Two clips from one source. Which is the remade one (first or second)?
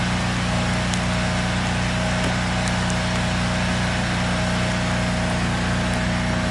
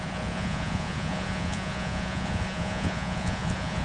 second